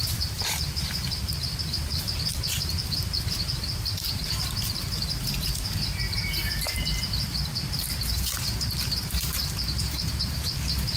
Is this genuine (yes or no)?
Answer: no